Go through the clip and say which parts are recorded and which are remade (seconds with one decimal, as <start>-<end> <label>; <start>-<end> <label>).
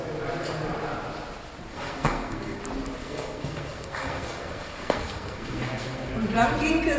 0.0-1.7 recorded; 1.7-2.6 remade; 2.6-3.0 recorded; 3.0-6.1 remade; 6.1-7.0 recorded